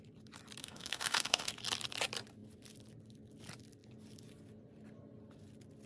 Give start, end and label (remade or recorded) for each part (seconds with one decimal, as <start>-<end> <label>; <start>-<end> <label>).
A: 0.0-0.6 recorded; 0.6-1.5 remade; 1.5-5.9 recorded